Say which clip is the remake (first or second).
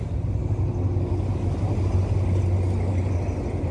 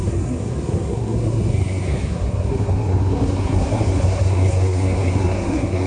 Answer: second